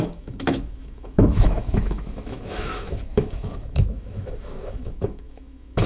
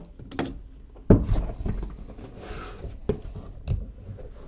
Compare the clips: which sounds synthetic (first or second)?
first